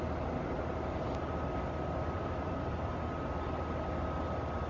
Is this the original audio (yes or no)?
yes